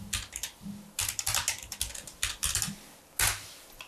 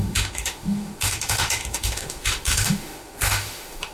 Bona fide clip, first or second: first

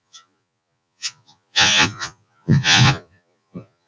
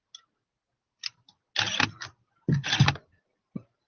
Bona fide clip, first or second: second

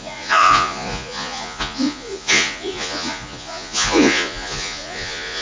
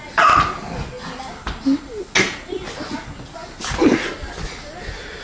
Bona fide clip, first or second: second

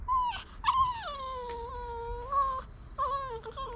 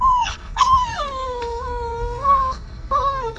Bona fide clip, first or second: first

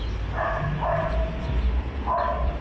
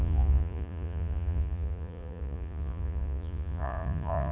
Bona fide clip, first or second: first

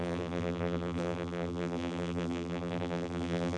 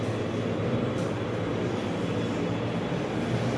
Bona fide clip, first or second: second